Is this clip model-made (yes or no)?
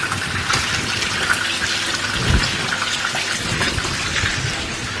no